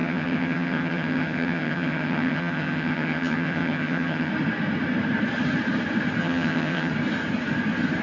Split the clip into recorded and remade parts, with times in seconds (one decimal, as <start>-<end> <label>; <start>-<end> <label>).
0.0-4.3 remade; 4.3-6.2 recorded; 6.2-6.9 remade; 6.9-8.0 recorded